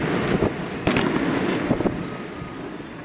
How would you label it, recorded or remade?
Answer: recorded